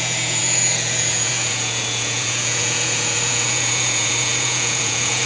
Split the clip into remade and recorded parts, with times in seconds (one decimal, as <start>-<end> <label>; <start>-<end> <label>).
0.0-5.3 remade